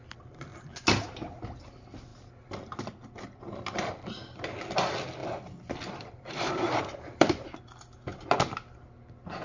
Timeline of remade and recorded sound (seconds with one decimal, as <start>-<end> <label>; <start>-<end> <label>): 0.0-5.2 recorded; 5.2-7.6 remade; 7.6-9.4 recorded